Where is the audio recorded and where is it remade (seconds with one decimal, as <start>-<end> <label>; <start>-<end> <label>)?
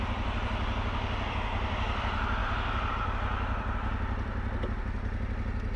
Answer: 0.0-4.3 remade; 4.3-5.8 recorded